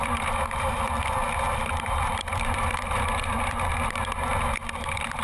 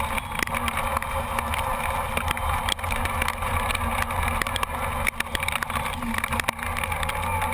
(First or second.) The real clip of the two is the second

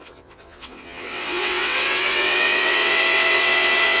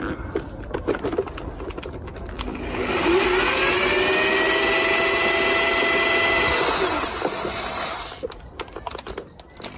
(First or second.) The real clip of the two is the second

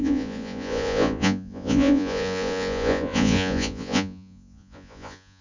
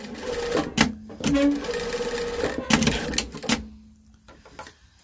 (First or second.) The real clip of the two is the second